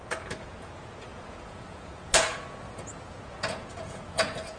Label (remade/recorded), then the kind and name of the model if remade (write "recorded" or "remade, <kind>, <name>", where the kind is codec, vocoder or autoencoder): remade, vocoder, Vocos